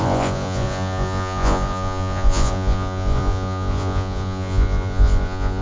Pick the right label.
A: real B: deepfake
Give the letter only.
B